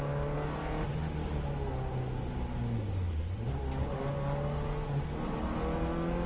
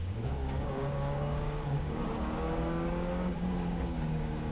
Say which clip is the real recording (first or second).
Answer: first